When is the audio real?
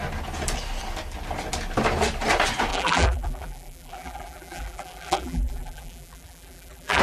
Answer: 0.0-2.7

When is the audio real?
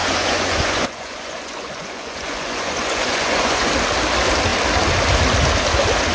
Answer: 3.7-6.1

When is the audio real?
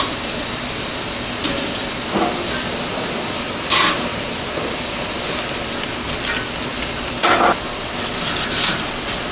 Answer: 0.0-9.3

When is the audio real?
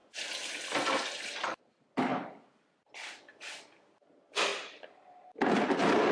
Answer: 1.7-2.1; 3.2-6.1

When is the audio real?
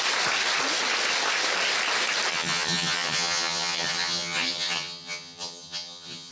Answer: 0.0-2.3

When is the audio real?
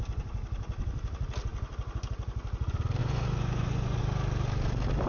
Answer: 0.0-3.0; 4.0-5.1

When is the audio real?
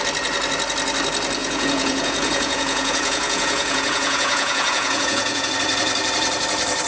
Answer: 0.0-1.4; 5.5-6.9